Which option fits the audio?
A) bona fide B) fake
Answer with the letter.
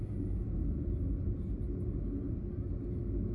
A